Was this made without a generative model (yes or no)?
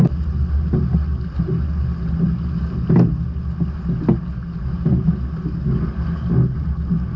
yes